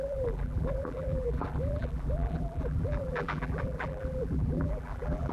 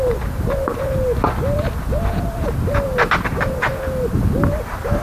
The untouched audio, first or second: second